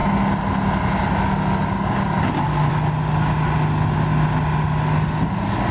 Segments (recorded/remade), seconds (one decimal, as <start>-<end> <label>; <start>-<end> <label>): 0.0-5.7 recorded